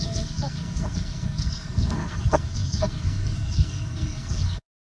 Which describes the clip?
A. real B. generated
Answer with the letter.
B